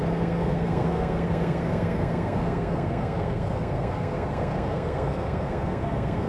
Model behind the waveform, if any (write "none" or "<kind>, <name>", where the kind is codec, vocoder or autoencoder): codec, SNAC